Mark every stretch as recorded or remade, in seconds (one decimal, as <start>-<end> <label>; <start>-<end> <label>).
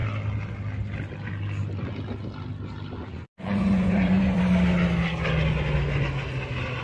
0.0-3.1 recorded; 3.1-4.4 remade; 4.4-6.8 recorded